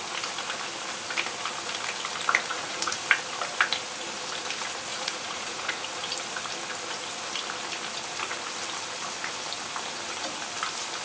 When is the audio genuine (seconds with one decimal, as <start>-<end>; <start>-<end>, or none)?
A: 0.0-2.5; 3.0-4.9; 5.7-11.0